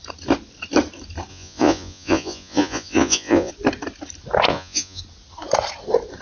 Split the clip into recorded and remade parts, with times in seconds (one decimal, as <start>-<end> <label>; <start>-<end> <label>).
0.0-1.3 recorded; 1.3-3.5 remade; 3.5-4.5 recorded; 4.5-5.0 remade; 5.0-6.2 recorded